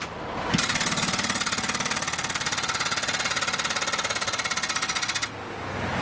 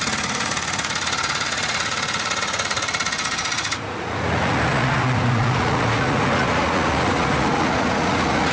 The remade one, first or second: second